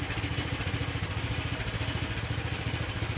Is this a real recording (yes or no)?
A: yes